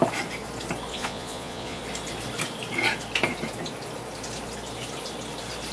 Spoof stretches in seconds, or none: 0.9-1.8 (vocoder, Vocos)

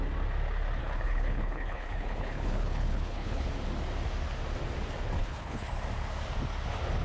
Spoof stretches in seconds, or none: 0.8-3.5 (codec, HILCodec); 5.2-5.7